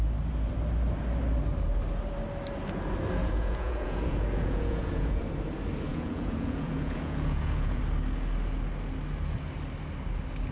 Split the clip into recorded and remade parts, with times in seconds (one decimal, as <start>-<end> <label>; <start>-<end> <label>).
0.0-3.2 recorded; 3.2-5.2 remade; 5.2-5.9 recorded; 5.9-7.8 remade; 7.8-10.5 recorded